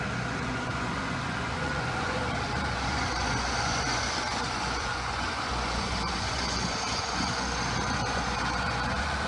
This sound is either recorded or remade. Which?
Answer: remade